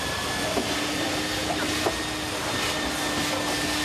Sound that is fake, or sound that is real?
real